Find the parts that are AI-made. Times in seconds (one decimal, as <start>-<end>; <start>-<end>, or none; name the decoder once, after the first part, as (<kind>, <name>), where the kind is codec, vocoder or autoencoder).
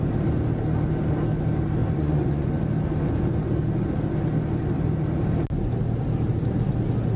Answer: 1.8-2.6 (vocoder, Vocos)